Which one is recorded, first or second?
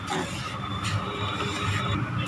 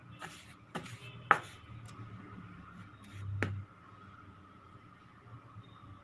second